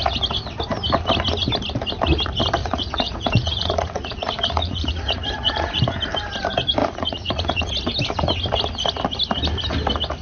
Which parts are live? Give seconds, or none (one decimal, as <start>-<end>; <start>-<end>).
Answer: 0.0-2.6; 5.8-6.8; 7.7-10.2